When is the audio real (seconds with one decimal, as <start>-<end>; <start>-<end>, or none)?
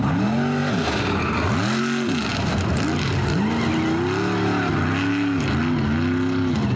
0.0-6.8